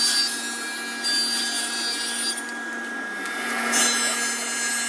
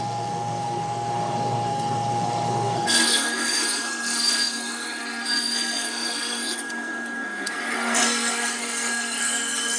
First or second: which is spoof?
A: second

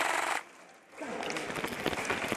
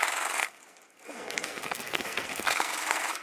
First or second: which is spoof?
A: second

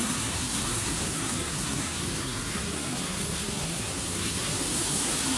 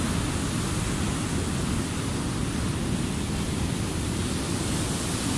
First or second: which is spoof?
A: first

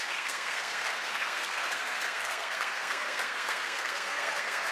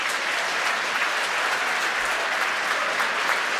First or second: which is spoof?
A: first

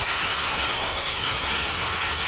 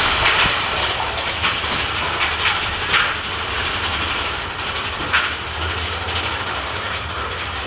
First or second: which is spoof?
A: first